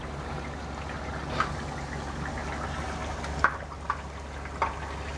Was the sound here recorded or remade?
recorded